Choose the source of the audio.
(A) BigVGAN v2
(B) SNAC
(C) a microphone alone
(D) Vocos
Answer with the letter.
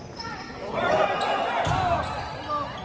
C